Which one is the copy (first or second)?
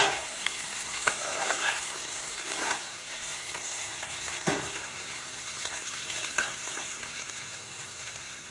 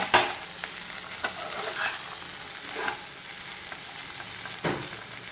first